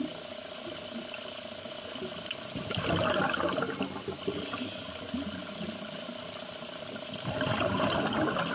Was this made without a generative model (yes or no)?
yes